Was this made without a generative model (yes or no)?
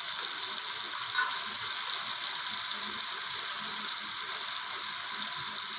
yes